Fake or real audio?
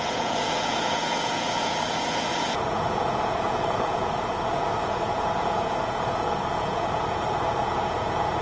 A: fake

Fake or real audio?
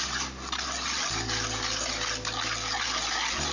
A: real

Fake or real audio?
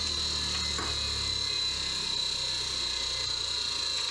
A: real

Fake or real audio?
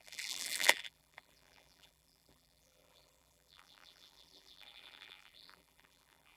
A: fake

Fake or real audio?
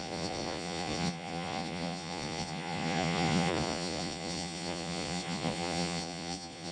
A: fake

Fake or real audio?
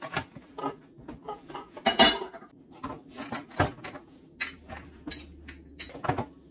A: real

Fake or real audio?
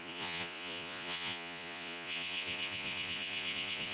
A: fake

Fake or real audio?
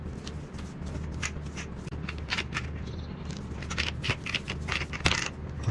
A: real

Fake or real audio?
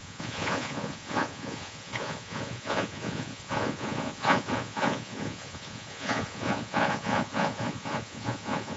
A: fake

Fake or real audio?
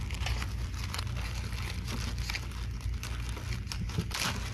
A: real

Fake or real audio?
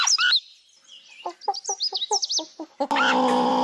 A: real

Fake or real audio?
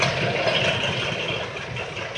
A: real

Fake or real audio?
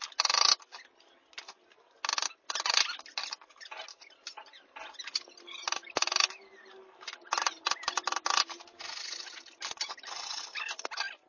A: real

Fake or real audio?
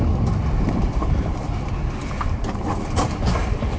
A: real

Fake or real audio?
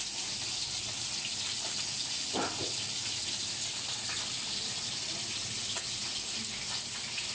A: real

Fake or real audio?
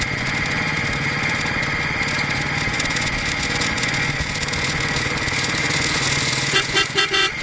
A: fake